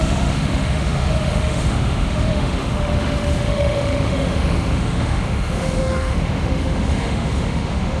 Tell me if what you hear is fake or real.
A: fake